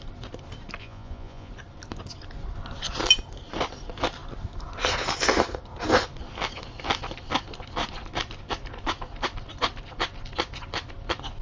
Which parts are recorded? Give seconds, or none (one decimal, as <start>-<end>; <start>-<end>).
0.0-0.8; 1.5-11.4